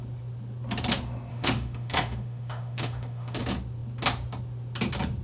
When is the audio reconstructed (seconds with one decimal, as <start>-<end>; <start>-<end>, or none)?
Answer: 1.3-3.4